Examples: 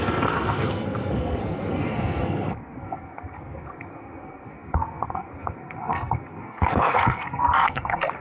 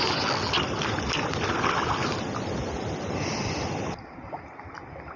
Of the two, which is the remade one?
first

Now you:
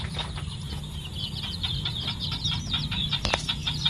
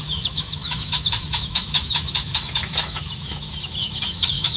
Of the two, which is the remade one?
second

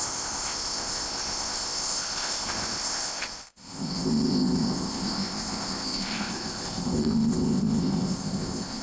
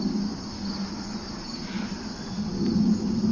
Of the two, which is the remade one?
first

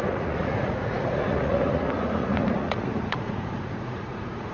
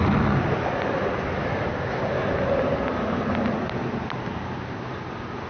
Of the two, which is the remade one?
first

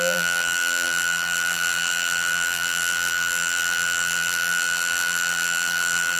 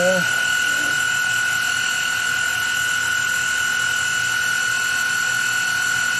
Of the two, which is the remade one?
first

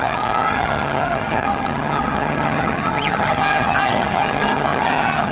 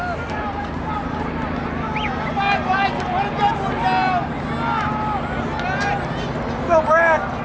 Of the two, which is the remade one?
first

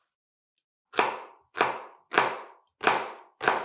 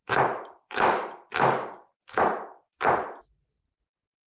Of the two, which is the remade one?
second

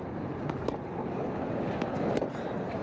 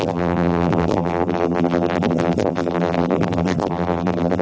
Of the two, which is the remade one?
second